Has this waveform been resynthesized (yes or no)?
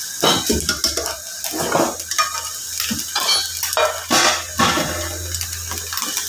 no